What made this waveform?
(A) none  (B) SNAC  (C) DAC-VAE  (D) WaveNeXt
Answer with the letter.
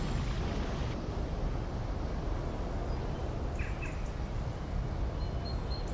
A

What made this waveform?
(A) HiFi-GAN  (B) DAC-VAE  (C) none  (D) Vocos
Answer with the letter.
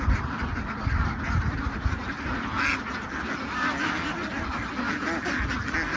C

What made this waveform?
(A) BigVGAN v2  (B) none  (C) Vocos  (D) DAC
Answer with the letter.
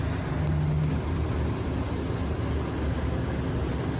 B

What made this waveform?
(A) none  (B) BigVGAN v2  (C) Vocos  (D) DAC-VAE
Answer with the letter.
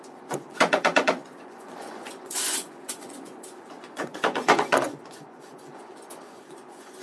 C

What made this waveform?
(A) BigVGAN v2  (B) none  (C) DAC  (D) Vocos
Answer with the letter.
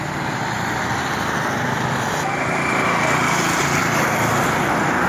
B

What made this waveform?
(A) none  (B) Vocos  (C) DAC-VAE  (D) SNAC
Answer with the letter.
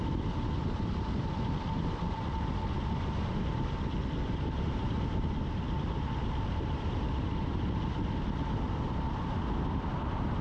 A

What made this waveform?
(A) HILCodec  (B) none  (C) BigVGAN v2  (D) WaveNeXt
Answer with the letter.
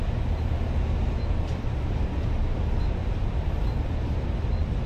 B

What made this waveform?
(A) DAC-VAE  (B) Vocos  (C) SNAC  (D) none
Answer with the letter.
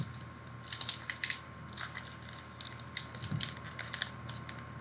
D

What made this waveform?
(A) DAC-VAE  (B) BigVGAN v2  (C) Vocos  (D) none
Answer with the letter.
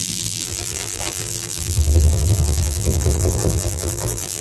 B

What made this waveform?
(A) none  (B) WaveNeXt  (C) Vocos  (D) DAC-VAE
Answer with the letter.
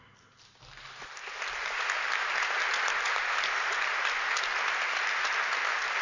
A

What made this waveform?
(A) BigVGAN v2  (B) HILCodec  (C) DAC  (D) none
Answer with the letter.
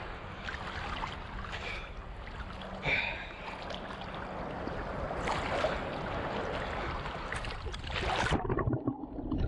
D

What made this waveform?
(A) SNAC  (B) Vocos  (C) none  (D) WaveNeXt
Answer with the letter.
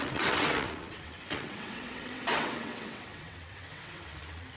D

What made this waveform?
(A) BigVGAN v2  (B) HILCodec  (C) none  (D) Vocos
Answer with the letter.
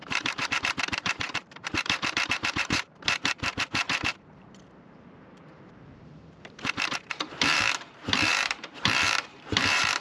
A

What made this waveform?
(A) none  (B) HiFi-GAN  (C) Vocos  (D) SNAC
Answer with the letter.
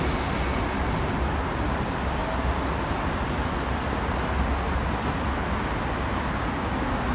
A